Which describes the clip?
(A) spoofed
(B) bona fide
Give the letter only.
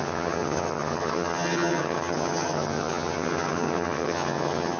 A